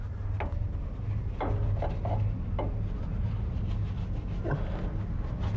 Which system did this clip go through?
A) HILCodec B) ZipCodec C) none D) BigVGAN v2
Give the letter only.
C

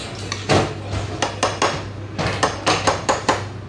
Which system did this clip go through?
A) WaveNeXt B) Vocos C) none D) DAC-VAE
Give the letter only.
C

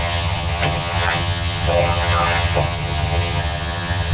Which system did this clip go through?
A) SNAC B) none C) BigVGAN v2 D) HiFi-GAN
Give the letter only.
D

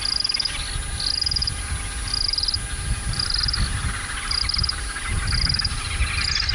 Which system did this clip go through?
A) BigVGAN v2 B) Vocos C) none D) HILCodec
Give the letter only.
C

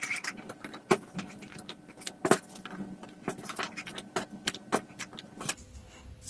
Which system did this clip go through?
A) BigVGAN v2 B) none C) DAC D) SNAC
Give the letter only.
B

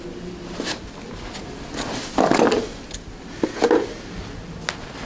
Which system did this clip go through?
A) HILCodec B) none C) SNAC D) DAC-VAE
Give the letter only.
B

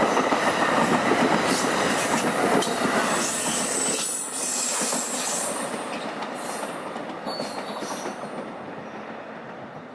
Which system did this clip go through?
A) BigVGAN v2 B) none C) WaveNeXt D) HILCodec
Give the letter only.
B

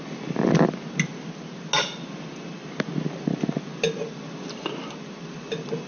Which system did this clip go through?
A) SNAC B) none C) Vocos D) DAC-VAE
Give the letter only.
B